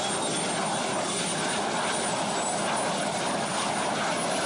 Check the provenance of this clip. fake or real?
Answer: real